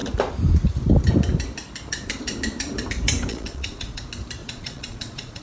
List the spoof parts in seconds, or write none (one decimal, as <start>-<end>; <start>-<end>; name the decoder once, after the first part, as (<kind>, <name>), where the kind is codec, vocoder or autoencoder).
3.3-4.0 (vocoder, Vocos); 4.4-5.4